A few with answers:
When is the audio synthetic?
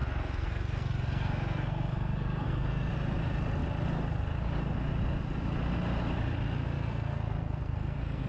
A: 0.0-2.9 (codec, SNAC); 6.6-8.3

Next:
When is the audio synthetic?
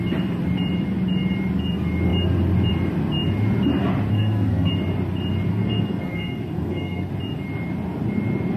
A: 4.1-4.7 (codec, SNAC); 5.5-7.1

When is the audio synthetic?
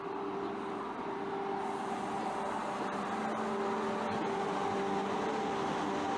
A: none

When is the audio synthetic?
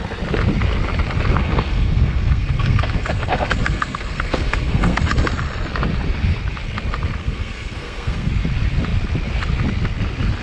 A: 1.4-5.0 (codec, SNAC); 7.2-8.3